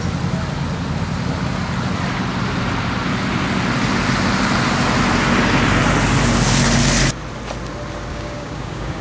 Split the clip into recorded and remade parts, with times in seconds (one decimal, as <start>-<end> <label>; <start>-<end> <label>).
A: 0.0-8.1 recorded; 8.1-9.0 remade